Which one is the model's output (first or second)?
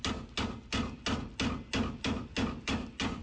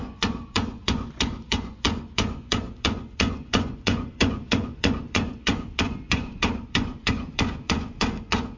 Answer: second